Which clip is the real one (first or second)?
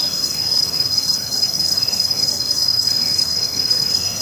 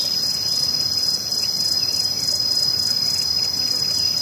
second